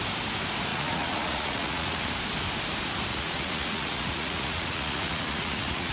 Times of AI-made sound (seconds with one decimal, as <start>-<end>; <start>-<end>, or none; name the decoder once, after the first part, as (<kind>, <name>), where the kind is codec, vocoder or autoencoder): 0.7-2.1 (vocoder, Vocos); 3.1-5.9